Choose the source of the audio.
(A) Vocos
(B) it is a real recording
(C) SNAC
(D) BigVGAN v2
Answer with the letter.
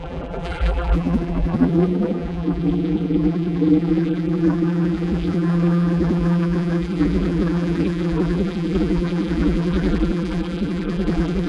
D